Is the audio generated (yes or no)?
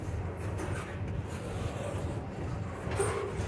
no